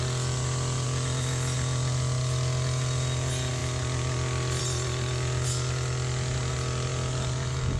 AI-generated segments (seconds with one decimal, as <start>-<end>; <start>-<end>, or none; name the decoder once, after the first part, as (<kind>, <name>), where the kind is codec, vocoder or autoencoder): none